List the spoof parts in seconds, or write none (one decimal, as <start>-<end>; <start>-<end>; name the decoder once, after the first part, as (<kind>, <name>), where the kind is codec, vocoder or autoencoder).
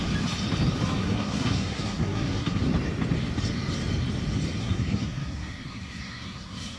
1.0-2.6 (codec, SNAC); 4.6-6.8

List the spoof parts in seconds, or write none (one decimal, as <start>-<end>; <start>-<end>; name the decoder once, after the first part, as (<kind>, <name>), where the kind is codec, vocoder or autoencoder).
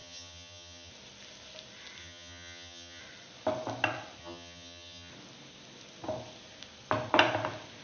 0.0-0.9 (vocoder, HiFi-GAN); 2.0-3.0; 4.2-5.1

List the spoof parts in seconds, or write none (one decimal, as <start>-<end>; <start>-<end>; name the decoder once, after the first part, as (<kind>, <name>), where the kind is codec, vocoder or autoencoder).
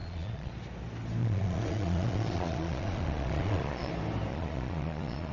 0.0-0.5 (vocoder, Vocos); 1.2-3.9; 4.3-5.3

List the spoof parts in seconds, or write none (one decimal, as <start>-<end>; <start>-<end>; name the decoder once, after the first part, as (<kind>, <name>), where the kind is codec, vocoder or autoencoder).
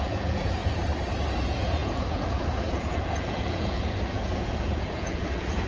0.0-0.6 (vocoder, Vocos); 1.4-5.7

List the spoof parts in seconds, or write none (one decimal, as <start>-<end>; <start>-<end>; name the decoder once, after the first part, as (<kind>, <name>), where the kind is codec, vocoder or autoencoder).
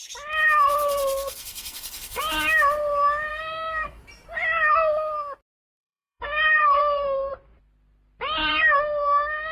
0.7-2.2 (codec, SNAC); 3.3-4.0; 5.7-7.3; 8.5-9.5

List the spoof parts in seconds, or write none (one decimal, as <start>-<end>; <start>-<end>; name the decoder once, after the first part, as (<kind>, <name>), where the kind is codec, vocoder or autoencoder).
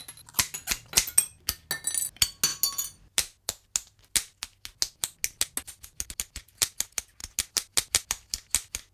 none